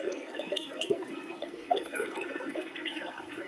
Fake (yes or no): yes